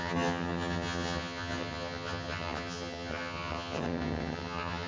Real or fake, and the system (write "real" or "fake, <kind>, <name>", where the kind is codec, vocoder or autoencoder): fake, vocoder, HiFi-GAN